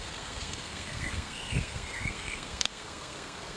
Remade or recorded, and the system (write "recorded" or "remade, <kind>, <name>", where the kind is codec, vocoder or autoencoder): remade, codec, SNAC